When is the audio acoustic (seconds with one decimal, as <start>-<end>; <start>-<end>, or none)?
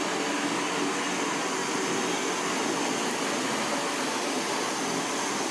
0.0-5.5